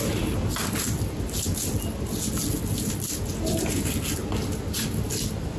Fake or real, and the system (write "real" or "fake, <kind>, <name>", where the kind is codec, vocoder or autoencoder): real